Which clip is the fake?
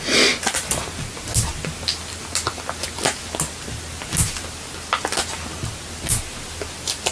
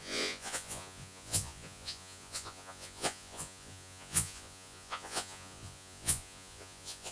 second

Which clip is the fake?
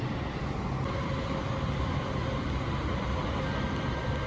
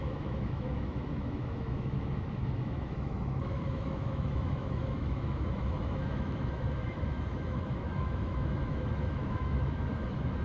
second